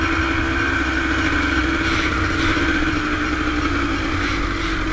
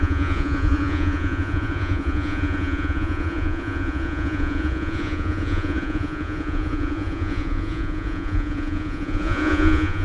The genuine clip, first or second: first